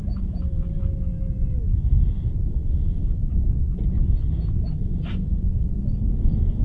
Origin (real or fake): real